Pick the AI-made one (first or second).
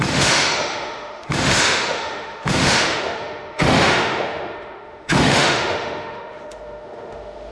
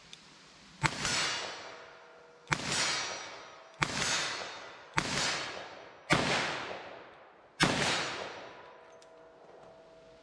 first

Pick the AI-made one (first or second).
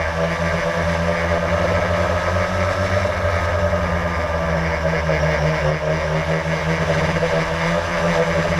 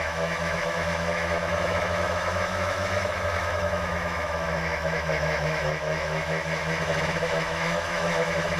second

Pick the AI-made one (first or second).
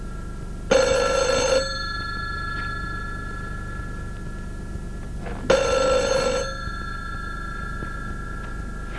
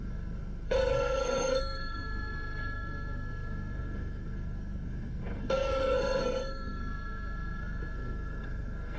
second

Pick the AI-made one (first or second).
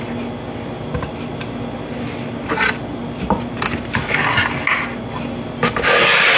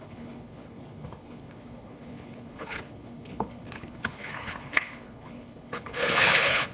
second